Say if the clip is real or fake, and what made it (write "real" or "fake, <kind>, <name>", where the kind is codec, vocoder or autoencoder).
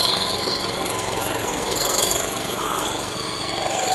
fake, codec, SNAC